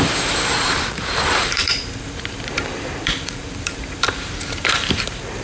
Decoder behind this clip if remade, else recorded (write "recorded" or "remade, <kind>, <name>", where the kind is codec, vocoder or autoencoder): remade, vocoder, BigVGAN v2